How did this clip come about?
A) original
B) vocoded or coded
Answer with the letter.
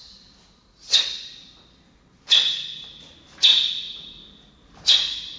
A